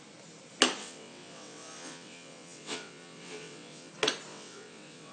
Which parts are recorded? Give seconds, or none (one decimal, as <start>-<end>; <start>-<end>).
0.0-0.8; 3.9-4.3